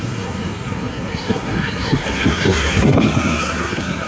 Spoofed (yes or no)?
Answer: yes